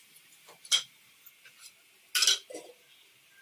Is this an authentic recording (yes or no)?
yes